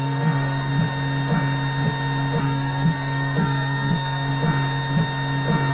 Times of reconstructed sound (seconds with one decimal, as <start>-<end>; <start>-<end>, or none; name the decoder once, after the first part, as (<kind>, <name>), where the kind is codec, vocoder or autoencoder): 0.0-0.7 (codec, SNAC); 2.4-4.3